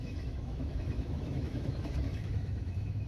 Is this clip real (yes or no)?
no